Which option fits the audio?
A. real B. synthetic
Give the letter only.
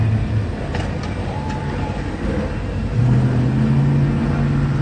A